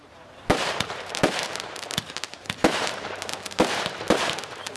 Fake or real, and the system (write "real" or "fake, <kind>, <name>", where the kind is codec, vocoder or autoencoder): fake, vocoder, BigVGAN v2